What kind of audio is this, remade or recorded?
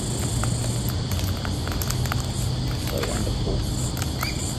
recorded